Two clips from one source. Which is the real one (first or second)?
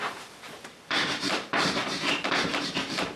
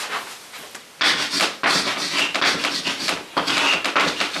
second